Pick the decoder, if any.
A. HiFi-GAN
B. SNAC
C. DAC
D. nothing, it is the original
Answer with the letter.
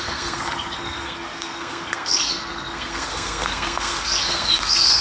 B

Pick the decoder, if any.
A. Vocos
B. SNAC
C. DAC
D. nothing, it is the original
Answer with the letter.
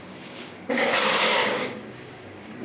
C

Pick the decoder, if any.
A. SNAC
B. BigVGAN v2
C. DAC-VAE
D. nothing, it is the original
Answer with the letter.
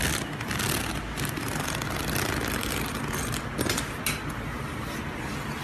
D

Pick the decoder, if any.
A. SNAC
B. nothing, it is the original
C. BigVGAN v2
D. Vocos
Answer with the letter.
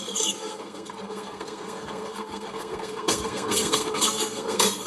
A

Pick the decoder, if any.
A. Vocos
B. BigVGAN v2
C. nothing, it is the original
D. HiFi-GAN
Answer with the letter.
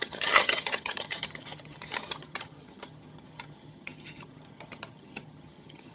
D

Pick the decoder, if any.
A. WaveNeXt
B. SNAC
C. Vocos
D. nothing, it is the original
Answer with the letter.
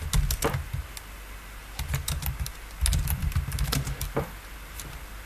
D